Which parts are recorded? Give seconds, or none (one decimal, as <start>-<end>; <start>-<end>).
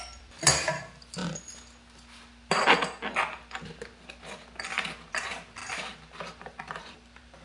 1.2-5.1; 5.6-6.8